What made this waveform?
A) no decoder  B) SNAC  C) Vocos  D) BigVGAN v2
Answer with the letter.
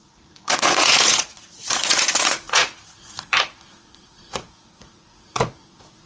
C